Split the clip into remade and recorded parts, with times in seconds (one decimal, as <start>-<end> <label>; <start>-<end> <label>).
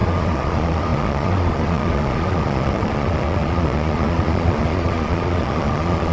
0.0-6.1 remade